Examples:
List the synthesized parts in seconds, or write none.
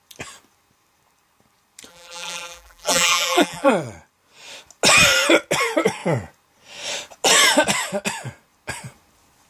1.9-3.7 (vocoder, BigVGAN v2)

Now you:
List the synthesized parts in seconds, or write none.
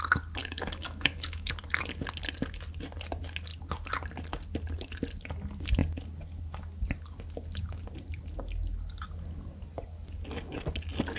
0.4-1.5 (autoencoder, DAC-VAE)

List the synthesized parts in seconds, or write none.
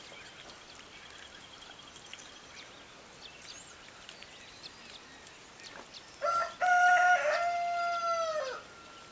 none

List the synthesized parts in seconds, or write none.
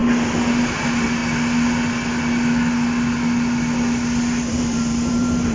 0.6-1.2 (vocoder, BigVGAN v2); 4.5-5.5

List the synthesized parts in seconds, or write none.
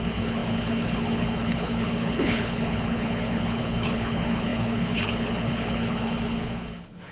0.0-7.1 (codec, HILCodec)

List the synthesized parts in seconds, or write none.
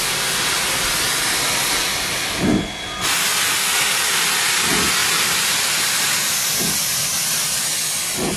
5.0-5.9 (vocoder, BigVGAN v2)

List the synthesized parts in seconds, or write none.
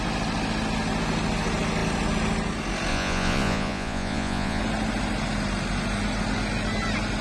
2.9-4.6 (vocoder, Vocos)